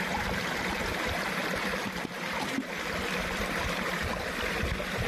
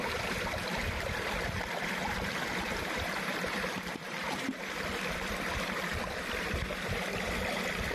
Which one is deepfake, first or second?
second